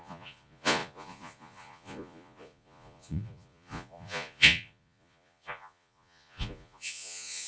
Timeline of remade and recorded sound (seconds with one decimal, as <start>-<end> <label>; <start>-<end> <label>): 0.0-7.5 remade